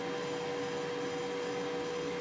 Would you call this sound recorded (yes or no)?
yes